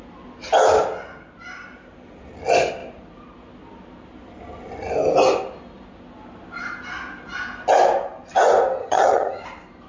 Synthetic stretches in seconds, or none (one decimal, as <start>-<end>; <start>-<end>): 8.8-9.4